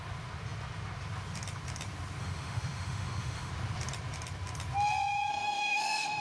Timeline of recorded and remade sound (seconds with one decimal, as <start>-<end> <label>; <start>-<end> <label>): 0.0-2.2 recorded; 2.2-3.5 remade; 3.5-5.3 recorded; 5.3-6.2 remade